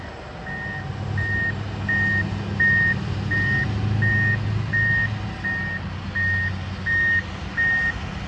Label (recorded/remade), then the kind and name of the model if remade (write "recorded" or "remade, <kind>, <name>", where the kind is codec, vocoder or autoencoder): recorded